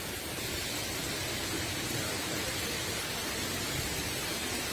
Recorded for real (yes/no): no